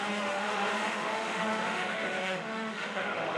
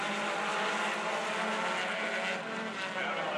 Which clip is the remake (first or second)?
first